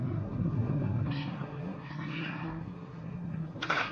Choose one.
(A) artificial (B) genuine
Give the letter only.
A